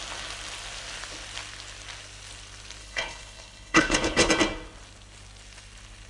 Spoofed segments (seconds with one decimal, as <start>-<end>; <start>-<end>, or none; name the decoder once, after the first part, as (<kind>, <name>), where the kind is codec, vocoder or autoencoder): 2.8-4.3 (codec, HILCodec)